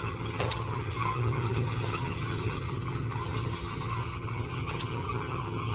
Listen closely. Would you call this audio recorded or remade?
remade